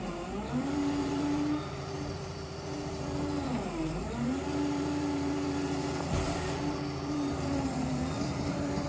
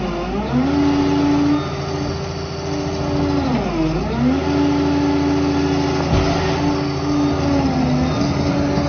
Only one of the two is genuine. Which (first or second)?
second